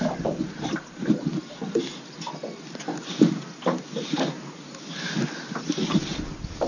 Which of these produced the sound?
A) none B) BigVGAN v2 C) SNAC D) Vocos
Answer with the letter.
A